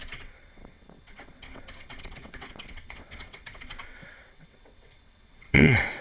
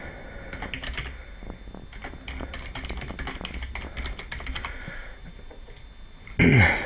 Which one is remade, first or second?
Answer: first